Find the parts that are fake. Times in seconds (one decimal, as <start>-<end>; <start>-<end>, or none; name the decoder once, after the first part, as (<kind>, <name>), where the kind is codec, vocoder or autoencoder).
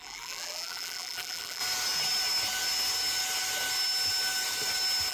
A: 0.0-1.6 (vocoder, BigVGAN v2)